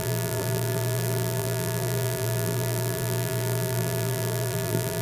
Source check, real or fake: fake